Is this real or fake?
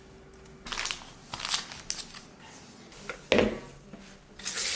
real